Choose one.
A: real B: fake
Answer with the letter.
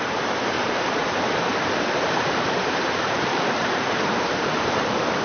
B